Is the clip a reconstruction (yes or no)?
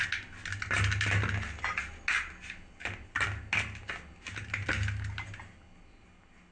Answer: no